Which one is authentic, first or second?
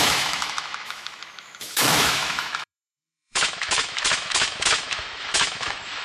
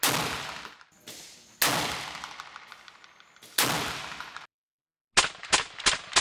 second